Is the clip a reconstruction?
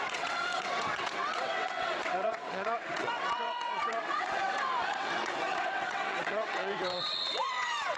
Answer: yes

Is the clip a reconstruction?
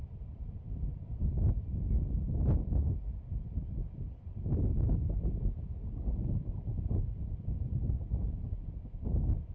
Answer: no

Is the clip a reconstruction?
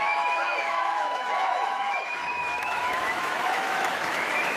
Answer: yes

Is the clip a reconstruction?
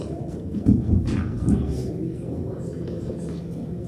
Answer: yes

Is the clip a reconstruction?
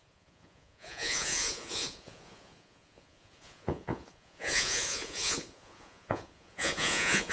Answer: yes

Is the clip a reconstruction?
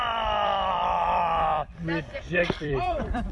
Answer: yes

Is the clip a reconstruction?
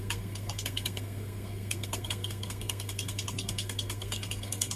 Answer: yes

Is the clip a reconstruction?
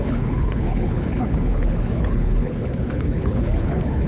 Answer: yes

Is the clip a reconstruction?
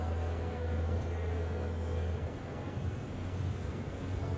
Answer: yes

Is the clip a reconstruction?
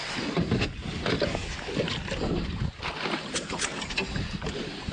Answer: no